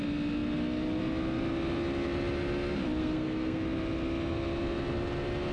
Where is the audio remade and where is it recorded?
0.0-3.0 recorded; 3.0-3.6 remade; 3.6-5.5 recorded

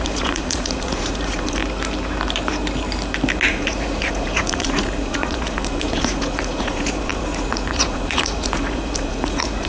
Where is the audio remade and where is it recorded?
0.0-1.6 remade; 1.6-3.5 recorded; 3.5-9.7 remade

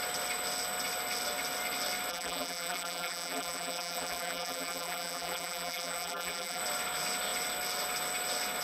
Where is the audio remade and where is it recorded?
0.0-2.1 recorded; 2.1-6.6 remade; 6.6-8.6 recorded

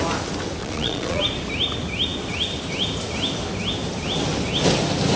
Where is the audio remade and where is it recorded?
0.0-0.6 recorded; 0.6-1.2 remade; 1.2-5.2 recorded

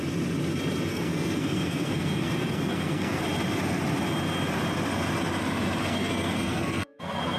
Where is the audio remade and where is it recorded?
0.0-0.9 recorded; 0.9-3.2 remade; 3.2-5.8 recorded; 5.8-7.4 remade

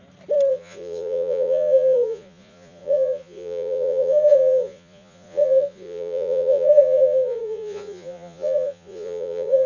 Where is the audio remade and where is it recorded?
0.0-0.5 recorded; 0.5-9.7 remade

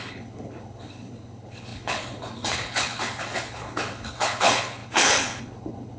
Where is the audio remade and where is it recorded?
0.0-6.0 remade